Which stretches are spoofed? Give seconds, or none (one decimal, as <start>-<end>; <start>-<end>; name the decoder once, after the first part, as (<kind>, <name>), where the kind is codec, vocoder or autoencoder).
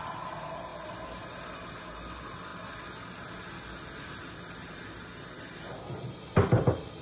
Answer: none